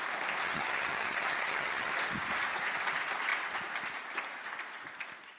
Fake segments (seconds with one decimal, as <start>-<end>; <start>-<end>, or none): 0.4-1.9